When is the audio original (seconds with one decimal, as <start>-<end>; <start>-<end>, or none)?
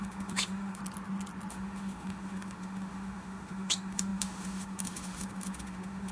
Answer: 0.8-1.5